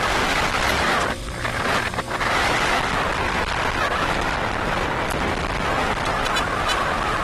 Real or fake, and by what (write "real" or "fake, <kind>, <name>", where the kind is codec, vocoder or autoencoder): real